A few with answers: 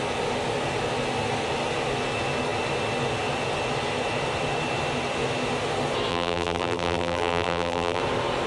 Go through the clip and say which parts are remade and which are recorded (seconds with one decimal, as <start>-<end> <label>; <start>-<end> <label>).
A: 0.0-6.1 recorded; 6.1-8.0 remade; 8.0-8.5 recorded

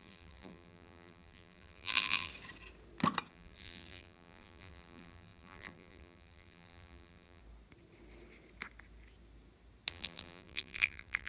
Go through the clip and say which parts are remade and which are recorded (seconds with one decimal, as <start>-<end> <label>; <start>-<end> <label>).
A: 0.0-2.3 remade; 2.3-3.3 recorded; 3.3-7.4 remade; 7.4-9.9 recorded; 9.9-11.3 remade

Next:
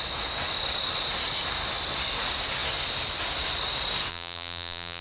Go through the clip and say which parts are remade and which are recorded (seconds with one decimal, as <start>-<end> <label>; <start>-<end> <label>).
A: 0.0-4.1 recorded; 4.1-5.0 remade

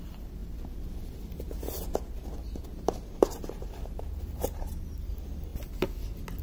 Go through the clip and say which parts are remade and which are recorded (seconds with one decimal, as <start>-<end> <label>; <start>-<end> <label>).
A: 0.0-2.7 recorded; 2.7-5.1 remade; 5.1-6.4 recorded

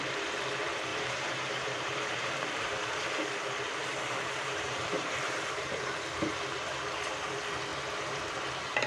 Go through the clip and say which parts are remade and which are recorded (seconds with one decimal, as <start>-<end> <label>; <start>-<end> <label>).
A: 0.0-0.9 recorded; 0.9-2.7 remade; 2.7-3.8 recorded; 3.8-6.6 remade; 6.6-7.7 recorded; 7.7-8.9 remade

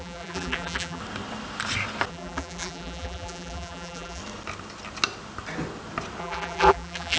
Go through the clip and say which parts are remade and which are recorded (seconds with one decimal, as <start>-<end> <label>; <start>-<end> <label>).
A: 0.0-1.0 remade; 1.0-2.1 recorded; 2.1-4.2 remade; 4.2-6.2 recorded; 6.2-7.2 remade